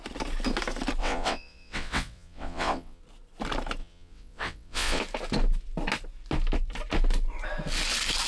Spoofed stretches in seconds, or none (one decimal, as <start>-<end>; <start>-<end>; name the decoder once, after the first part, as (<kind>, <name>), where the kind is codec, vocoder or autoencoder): 1.0-3.0 (vocoder, WaveNeXt); 3.8-5.0